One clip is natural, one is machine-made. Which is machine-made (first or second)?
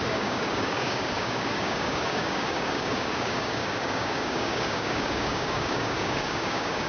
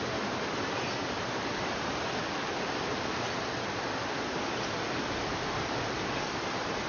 first